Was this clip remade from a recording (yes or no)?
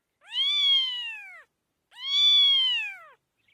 no